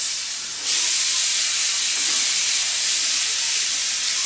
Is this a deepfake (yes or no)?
no